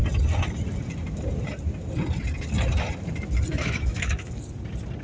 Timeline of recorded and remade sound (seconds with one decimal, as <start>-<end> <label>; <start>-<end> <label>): 0.0-3.5 recorded; 3.5-4.3 remade; 4.3-5.0 recorded